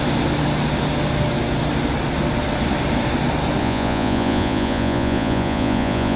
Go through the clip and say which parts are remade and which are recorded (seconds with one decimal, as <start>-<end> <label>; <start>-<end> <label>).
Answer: 0.0-3.6 recorded; 3.6-6.2 remade